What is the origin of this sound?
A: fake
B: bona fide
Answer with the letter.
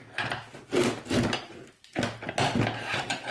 B